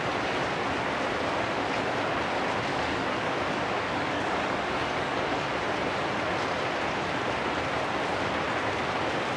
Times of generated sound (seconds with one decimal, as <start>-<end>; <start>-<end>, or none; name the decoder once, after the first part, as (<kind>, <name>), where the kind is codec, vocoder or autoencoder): 2.7-5.5 (codec, DAC)